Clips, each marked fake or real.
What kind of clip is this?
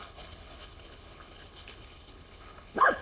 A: fake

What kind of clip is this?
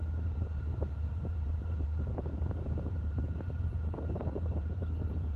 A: fake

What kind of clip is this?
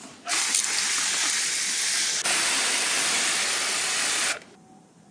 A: real